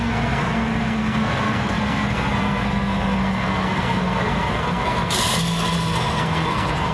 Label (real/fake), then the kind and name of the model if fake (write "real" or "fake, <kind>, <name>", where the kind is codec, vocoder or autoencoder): fake, codec, SNAC